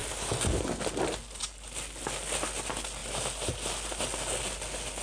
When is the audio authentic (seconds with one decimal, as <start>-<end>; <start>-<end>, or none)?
0.0-5.0